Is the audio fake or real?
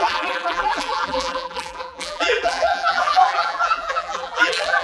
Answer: fake